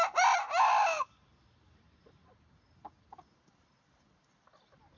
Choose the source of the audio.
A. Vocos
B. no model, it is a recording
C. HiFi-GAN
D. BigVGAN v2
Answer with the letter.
B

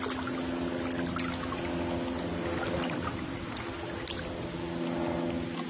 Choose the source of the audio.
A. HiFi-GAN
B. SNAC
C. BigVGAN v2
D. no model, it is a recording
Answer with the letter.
D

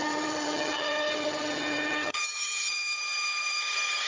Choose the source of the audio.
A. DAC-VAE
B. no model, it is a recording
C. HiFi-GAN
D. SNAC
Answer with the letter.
C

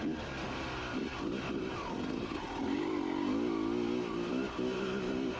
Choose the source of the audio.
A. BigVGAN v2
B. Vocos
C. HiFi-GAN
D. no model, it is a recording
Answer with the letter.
D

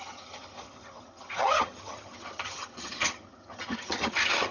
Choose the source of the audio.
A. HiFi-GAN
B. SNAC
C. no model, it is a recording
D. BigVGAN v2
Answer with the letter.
A